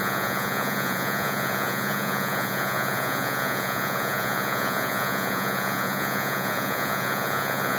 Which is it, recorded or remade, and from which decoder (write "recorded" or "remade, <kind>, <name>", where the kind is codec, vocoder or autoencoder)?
remade, vocoder, Vocos